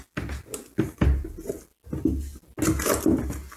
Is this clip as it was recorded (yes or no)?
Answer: yes